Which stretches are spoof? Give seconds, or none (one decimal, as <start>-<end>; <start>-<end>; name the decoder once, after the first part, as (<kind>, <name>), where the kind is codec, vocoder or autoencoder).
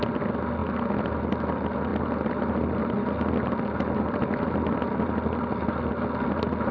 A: none